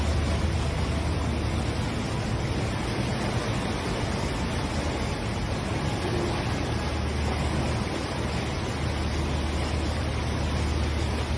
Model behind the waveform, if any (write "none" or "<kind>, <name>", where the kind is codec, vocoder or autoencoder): none